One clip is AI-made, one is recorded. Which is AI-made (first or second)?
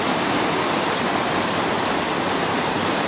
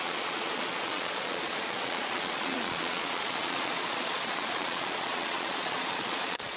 second